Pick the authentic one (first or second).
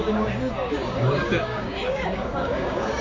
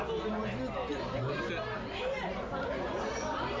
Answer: second